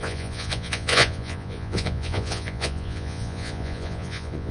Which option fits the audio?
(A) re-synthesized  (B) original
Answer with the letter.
A